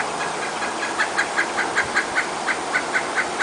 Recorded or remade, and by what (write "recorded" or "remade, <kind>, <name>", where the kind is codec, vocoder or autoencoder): recorded